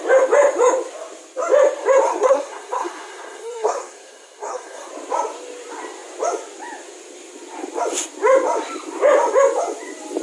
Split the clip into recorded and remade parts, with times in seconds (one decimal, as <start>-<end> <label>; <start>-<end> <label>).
0.0-2.1 recorded; 2.1-4.9 remade; 4.9-10.2 recorded